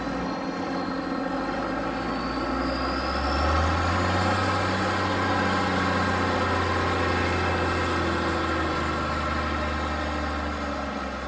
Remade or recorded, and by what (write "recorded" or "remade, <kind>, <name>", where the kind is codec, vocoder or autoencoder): recorded